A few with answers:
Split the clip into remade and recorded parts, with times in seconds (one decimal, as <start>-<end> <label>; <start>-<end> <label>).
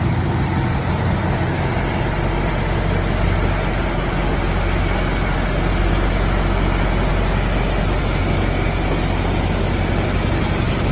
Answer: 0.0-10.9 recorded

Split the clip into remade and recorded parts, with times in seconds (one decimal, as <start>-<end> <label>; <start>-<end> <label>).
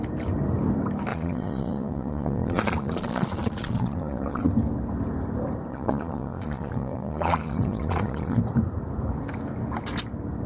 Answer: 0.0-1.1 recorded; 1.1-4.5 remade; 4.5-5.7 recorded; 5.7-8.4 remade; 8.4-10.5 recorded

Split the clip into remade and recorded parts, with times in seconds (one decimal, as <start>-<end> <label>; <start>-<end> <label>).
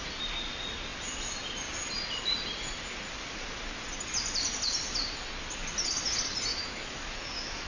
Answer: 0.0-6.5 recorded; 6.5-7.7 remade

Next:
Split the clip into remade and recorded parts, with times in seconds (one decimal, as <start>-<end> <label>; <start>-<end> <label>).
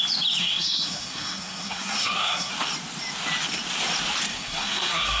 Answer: 0.0-0.4 recorded; 0.4-2.5 remade; 2.5-4.3 recorded; 4.3-5.2 remade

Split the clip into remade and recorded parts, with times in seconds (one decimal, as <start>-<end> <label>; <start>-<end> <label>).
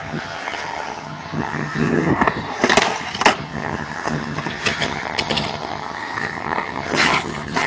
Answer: 0.0-2.1 remade; 2.1-3.4 recorded; 3.4-7.7 remade